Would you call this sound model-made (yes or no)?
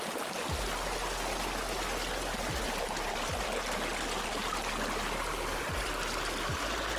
no